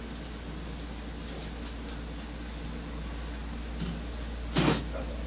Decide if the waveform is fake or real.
real